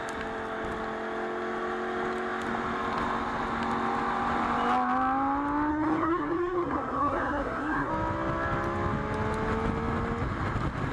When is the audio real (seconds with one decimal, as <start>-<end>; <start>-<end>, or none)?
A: 0.0-5.7; 7.9-10.9